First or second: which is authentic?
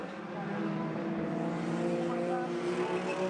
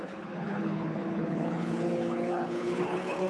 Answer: first